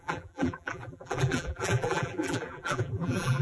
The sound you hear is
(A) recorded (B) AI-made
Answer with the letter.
B